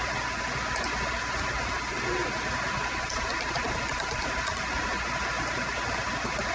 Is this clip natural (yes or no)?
yes